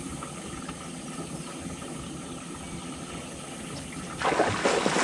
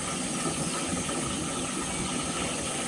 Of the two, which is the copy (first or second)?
second